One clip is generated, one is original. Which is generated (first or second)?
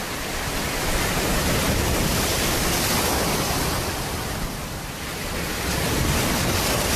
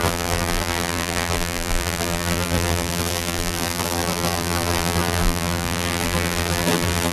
second